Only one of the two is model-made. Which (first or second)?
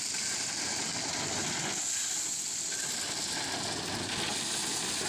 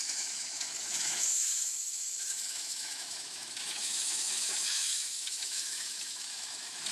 second